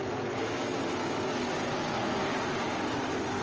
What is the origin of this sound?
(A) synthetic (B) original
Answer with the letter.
B